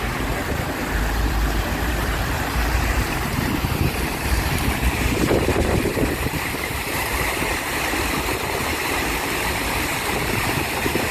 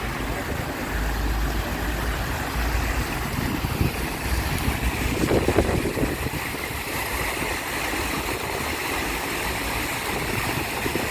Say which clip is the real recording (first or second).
second